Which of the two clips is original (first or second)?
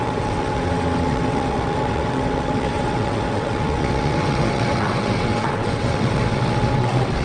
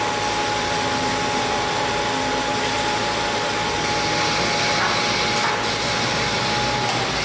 second